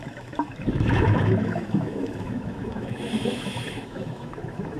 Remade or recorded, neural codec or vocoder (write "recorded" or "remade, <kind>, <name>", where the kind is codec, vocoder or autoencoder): remade, autoencoder, DAC-VAE